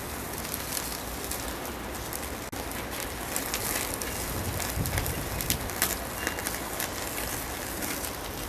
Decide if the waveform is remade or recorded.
recorded